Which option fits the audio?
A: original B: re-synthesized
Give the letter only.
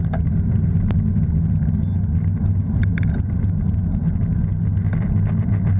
A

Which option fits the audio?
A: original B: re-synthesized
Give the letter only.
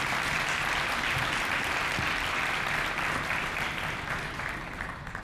A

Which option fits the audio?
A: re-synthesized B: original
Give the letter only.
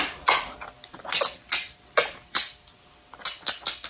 B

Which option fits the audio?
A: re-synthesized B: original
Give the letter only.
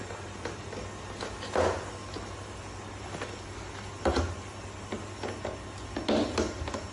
B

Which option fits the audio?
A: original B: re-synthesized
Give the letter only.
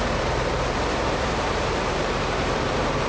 B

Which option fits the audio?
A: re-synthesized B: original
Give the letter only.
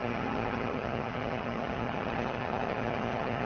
A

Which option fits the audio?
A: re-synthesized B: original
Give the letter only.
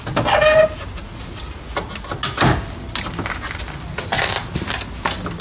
B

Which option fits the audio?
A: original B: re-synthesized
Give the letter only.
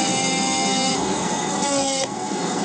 B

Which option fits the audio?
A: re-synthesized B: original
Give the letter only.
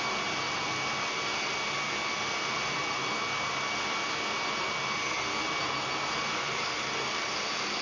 B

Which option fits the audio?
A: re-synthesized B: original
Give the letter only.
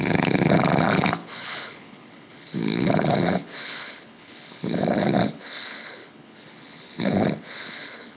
A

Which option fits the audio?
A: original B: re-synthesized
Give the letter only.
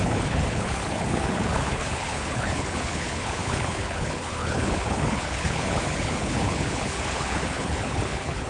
B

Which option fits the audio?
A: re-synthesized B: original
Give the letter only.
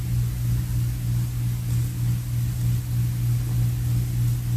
B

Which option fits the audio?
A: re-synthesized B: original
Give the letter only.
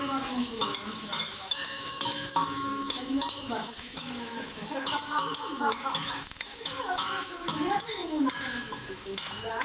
A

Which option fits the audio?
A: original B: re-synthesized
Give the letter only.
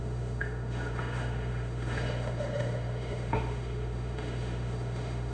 B